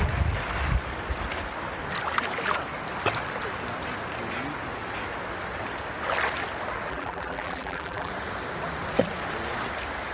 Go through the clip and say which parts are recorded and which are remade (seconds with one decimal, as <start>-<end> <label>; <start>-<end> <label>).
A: 0.0-6.9 recorded; 6.9-8.1 remade; 8.1-10.1 recorded